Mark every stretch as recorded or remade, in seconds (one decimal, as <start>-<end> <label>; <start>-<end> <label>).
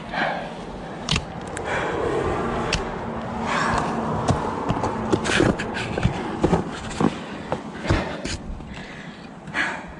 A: 0.0-8.8 recorded; 8.8-10.0 remade